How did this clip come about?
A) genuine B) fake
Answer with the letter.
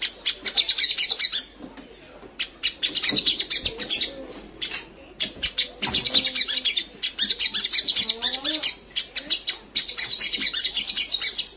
A